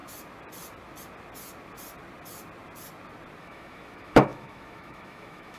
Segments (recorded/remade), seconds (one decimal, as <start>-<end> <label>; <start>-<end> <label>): 0.0-3.4 recorded; 3.4-5.6 remade